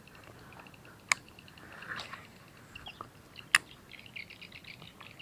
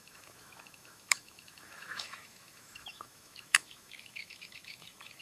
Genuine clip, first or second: first